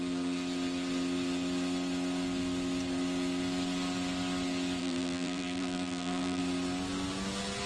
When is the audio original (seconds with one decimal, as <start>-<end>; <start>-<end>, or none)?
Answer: 0.0-4.8; 6.4-7.7